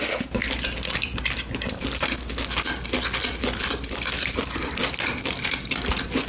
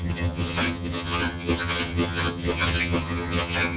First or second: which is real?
first